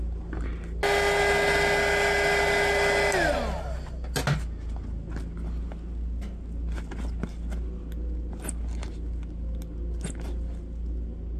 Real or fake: real